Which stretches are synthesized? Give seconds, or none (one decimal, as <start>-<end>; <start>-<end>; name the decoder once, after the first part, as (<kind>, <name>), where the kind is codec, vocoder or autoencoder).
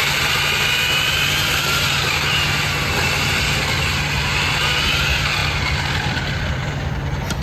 none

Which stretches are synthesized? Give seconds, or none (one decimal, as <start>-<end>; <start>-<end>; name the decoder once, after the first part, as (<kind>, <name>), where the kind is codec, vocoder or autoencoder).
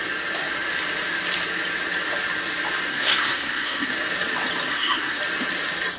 2.9-3.9 (codec, SNAC); 4.7-5.2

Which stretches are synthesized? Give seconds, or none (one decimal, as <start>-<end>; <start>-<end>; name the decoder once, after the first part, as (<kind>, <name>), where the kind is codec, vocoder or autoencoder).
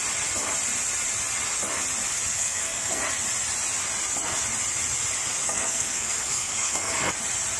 2.3-3.0 (codec, SNAC); 5.4-7.1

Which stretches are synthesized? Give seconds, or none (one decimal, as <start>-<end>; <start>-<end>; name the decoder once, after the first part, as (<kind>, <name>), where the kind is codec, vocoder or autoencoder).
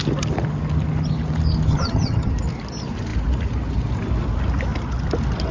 1.7-2.3 (vocoder, HiFi-GAN)